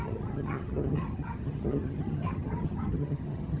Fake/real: fake